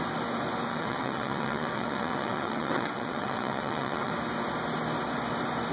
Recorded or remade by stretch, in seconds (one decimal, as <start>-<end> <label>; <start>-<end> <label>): 0.0-0.7 recorded; 0.7-4.1 remade; 4.1-5.7 recorded